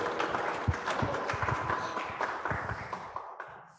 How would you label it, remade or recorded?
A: remade